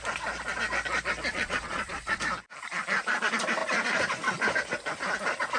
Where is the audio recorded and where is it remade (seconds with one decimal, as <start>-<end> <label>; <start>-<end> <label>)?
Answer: 0.0-1.3 recorded; 1.3-2.2 remade; 2.2-5.6 recorded